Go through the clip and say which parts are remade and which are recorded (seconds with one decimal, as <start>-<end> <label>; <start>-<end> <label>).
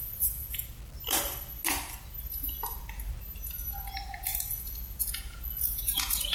0.0-0.7 remade; 0.7-4.5 recorded; 4.5-6.3 remade